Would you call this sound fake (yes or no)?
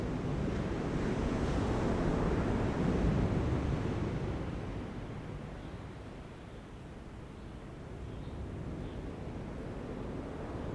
no